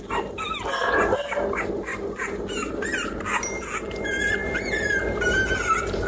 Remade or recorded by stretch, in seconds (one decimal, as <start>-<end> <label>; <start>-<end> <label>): 0.0-6.1 recorded